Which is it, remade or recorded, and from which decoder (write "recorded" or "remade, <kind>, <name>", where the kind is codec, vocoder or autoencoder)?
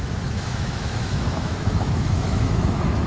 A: remade, autoencoder, DAC-VAE